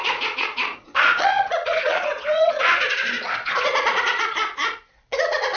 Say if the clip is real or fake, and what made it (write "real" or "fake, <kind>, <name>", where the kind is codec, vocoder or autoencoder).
fake, vocoder, Vocos